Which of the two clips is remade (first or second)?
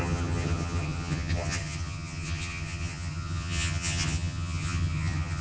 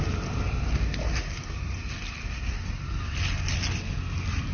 first